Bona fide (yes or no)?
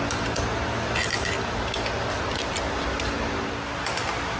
yes